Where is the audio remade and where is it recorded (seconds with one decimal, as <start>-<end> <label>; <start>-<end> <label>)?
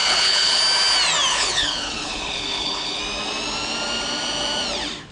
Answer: 0.0-0.6 remade; 0.6-1.3 recorded; 1.3-3.0 remade; 3.0-5.1 recorded